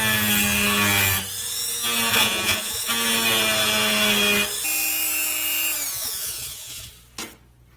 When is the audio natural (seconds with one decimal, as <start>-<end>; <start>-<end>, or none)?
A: 0.0-2.1; 2.9-5.9; 6.9-7.8